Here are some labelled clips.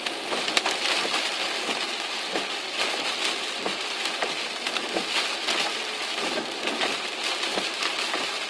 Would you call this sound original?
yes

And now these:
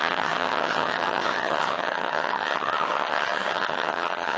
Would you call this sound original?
no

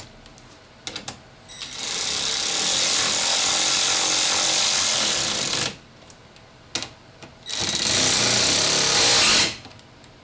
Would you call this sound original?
yes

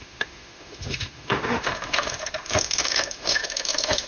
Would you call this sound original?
no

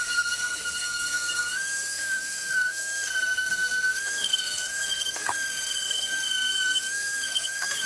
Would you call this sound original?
no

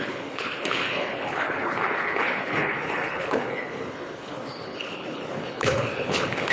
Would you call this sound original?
no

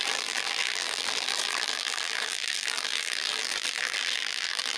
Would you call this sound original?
no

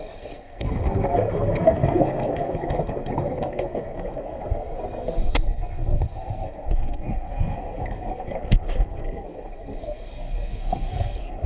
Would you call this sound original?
no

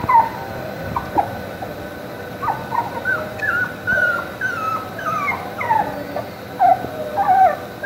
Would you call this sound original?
yes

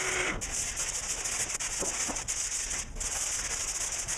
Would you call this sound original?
yes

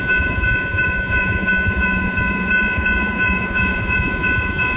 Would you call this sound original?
no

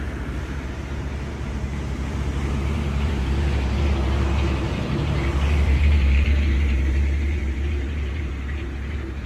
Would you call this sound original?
no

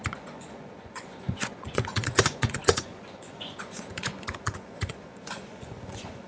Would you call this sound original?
no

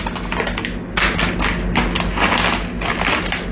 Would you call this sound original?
yes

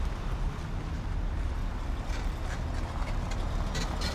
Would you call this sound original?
yes